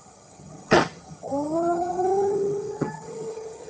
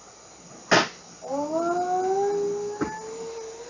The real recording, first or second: second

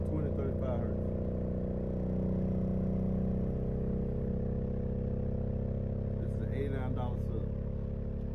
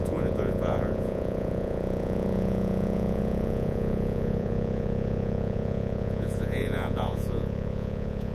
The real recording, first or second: first